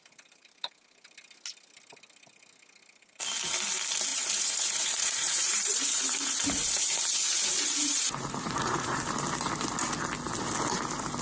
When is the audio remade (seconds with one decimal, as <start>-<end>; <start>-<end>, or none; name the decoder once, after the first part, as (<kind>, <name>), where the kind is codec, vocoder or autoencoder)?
4.1-9.0 (vocoder, Vocos)